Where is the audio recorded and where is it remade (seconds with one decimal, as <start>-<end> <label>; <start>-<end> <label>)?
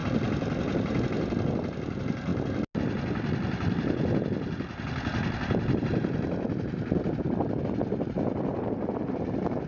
0.0-9.7 recorded